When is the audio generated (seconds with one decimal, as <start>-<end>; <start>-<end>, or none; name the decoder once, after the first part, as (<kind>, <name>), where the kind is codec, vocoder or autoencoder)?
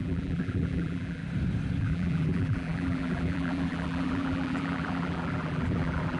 0.0-1.2 (vocoder, BigVGAN v2); 1.8-6.2